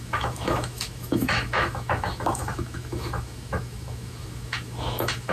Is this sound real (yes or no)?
no